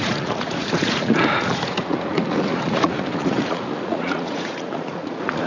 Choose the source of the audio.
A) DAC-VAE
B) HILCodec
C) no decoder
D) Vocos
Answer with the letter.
D